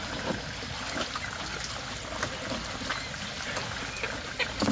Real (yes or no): yes